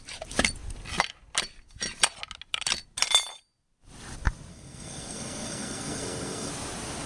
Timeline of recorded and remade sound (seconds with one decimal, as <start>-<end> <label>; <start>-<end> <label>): 0.0-4.5 recorded; 4.5-6.5 remade; 6.5-7.1 recorded